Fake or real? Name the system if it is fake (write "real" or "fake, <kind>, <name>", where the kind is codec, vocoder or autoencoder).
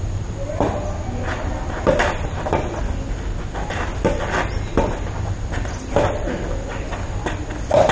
real